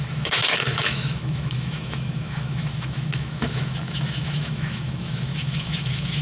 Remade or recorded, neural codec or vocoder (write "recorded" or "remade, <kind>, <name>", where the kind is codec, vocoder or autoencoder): remade, autoencoder, DAC-VAE